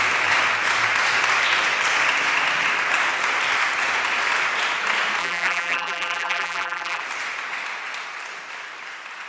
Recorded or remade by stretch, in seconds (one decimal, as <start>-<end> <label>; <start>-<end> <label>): 0.0-5.2 recorded; 5.2-7.0 remade; 7.0-9.3 recorded